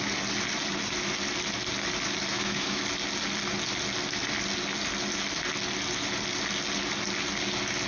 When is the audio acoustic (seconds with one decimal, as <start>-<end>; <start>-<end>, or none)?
0.0-2.3; 2.8-7.9